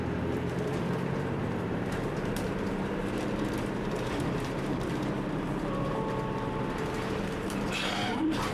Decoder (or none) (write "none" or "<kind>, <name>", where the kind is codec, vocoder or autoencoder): vocoder, BigVGAN v2